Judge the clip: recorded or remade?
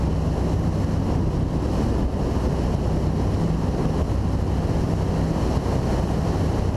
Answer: recorded